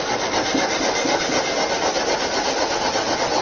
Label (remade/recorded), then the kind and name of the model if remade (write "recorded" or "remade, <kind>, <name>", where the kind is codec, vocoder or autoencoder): recorded